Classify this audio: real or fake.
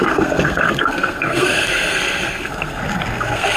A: fake